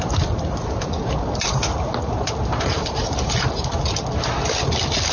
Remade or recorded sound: recorded